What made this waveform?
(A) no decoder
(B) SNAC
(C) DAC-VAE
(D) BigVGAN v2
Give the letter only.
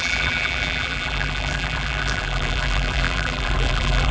D